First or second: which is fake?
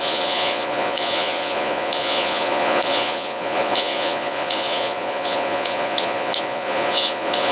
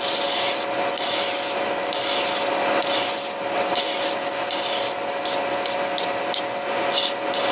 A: first